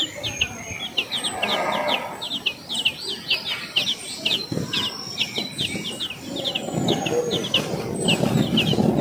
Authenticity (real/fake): real